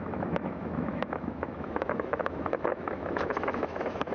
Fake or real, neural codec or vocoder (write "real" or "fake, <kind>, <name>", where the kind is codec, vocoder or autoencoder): fake, autoencoder, DAC-VAE